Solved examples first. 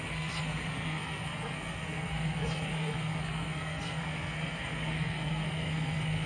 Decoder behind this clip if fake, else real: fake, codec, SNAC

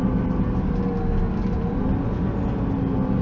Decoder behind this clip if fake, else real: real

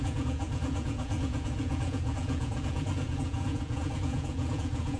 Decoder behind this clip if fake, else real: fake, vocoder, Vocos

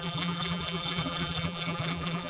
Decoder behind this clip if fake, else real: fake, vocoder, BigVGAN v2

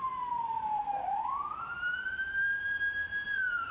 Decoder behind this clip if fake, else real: fake, vocoder, BigVGAN v2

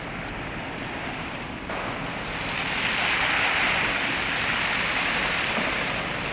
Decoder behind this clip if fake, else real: real